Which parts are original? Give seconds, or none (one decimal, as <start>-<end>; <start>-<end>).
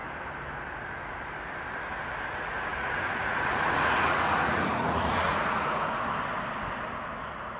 0.0-2.7; 6.1-7.6